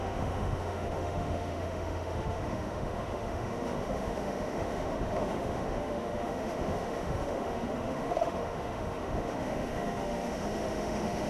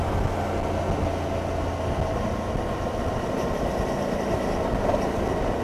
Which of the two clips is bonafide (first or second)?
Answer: second